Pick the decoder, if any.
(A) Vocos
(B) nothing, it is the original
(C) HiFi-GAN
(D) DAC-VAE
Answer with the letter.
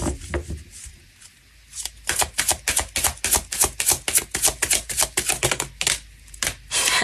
B